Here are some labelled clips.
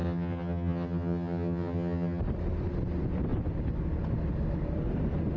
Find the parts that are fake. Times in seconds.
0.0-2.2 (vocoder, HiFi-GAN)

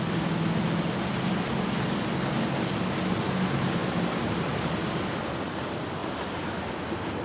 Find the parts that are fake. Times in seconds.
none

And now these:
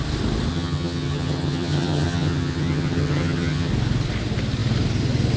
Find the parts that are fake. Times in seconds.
0.5-3.7 (vocoder, HiFi-GAN)

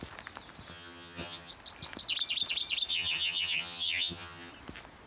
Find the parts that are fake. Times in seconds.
0.7-1.5 (vocoder, HiFi-GAN); 2.9-4.5

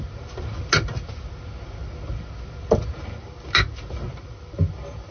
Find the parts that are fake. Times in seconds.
none

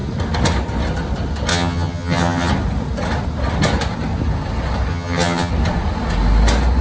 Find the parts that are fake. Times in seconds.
1.5-2.5 (vocoder, HiFi-GAN); 4.9-5.5

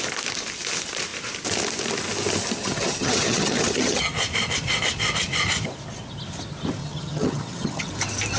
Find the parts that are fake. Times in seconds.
2.6-4.1 (vocoder, HiFi-GAN); 6.8-7.9